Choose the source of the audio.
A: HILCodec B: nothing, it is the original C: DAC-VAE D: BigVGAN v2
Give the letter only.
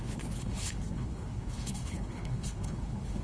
A